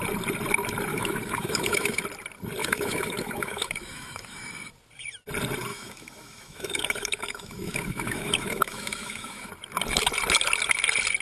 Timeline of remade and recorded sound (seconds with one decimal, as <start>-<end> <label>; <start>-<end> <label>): 0.0-0.9 recorded; 0.9-2.0 remade; 2.0-2.6 recorded; 2.6-4.5 remade; 4.5-5.7 recorded; 5.7-9.5 remade; 9.5-11.2 recorded